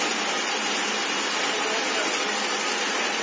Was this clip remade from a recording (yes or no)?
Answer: no